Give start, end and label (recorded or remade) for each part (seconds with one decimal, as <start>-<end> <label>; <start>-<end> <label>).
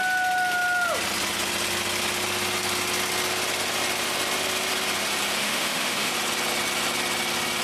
0.0-5.4 recorded; 5.4-6.1 remade; 6.1-7.6 recorded